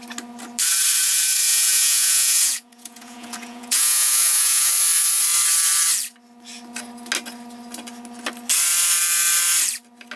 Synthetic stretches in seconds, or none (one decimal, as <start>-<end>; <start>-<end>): 1.5-4.7